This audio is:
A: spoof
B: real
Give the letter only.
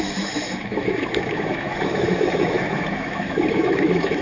A